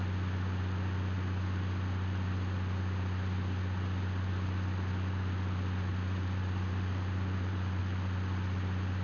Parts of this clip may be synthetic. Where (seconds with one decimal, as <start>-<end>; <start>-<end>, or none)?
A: 5.9-7.8